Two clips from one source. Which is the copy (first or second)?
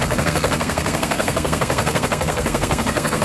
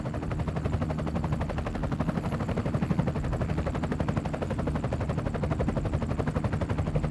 first